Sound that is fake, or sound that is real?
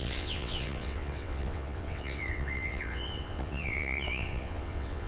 fake